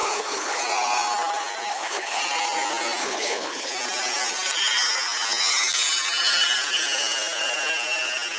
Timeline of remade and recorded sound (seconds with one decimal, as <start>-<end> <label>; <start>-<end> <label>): 0.0-0.6 remade; 0.6-1.7 recorded; 1.7-2.2 remade; 2.2-3.0 recorded; 3.0-3.7 remade; 3.7-8.4 recorded